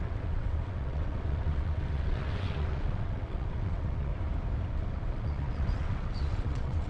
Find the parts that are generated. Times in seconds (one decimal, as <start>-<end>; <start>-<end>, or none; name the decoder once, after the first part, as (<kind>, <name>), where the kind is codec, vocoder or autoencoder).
0.0-4.1 (vocoder, WaveNeXt); 4.7-6.9